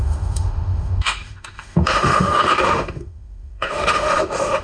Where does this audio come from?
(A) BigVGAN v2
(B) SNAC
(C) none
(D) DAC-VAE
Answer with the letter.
D